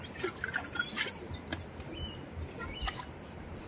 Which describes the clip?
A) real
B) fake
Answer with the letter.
A